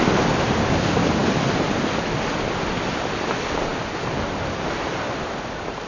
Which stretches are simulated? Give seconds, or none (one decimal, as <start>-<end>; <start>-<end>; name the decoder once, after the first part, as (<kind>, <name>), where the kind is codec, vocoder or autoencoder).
none